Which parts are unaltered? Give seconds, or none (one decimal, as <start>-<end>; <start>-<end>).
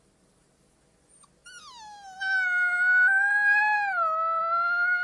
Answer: 0.0-5.0